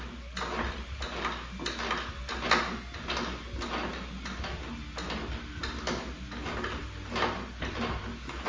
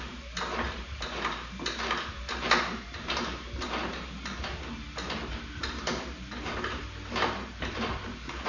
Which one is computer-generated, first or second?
second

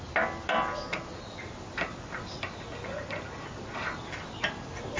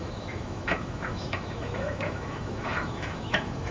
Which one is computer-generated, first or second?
second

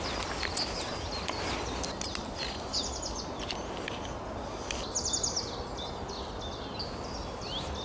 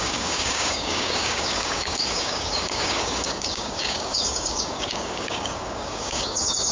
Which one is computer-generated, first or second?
second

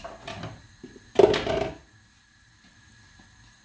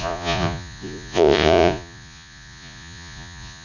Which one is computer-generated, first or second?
second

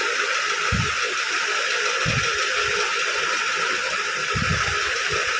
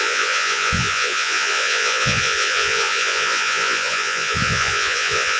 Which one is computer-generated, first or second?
second